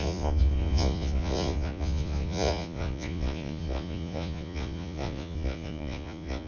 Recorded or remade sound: remade